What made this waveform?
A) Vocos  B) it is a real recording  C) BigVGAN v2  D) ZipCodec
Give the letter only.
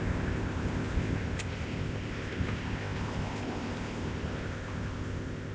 D